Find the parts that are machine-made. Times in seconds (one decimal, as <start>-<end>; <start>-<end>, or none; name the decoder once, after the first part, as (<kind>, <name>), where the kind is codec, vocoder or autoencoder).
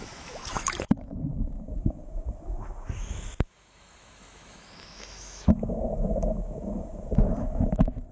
0.0-8.1 (autoencoder, DAC-VAE)